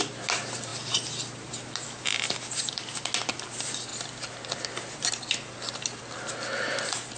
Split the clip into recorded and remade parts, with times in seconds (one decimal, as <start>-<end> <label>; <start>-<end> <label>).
0.0-7.2 recorded